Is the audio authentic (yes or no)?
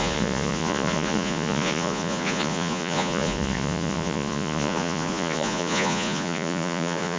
no